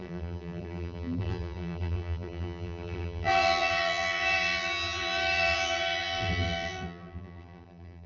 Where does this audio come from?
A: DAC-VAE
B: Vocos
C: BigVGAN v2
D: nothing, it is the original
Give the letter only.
C